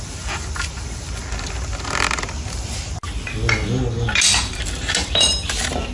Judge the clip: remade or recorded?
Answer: recorded